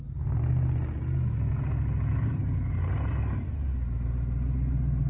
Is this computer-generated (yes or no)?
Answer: no